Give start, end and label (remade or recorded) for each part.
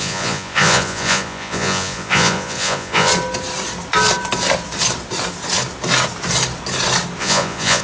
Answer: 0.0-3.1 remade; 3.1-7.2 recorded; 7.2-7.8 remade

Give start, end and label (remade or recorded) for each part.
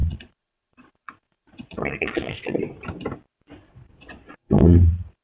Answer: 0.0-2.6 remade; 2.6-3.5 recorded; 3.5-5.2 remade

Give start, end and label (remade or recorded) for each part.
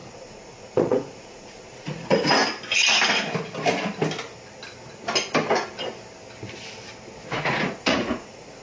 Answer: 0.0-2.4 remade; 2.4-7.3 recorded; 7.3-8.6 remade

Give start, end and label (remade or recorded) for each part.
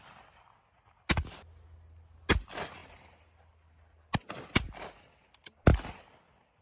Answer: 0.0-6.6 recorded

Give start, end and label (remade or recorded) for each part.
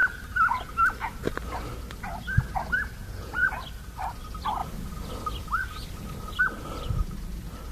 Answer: 0.0-3.0 recorded; 3.0-3.5 remade; 3.5-7.7 recorded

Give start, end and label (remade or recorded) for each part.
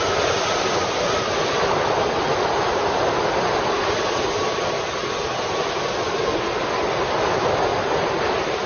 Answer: 0.0-8.7 recorded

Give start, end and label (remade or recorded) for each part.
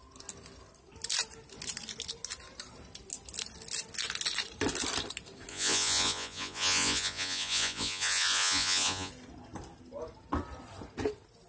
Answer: 0.0-5.5 recorded; 5.5-9.1 remade; 9.1-11.5 recorded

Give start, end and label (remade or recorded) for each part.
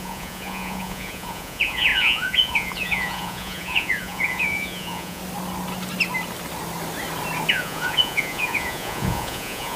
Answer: 0.0-5.2 remade; 5.2-7.5 recorded; 7.5-9.8 remade